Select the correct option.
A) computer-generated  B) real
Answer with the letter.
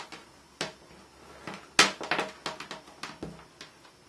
B